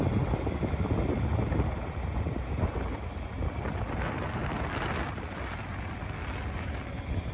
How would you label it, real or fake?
real